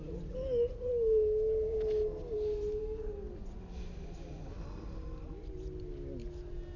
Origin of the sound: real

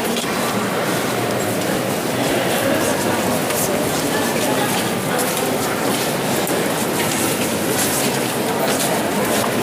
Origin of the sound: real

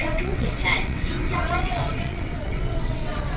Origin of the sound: fake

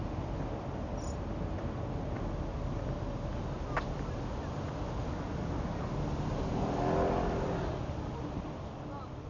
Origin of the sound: real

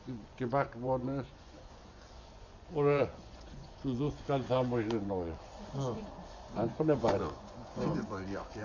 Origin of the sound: fake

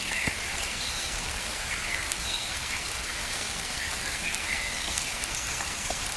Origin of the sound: fake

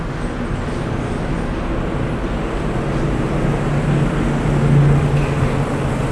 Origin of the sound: real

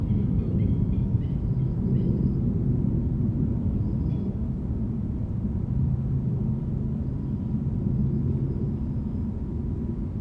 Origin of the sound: real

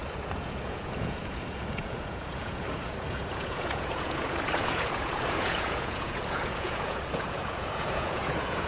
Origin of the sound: fake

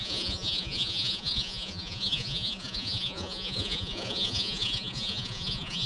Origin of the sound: fake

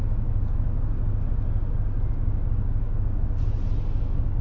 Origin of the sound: real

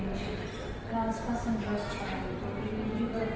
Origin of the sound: real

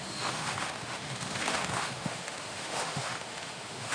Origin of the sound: fake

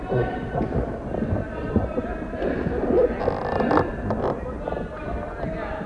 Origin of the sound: real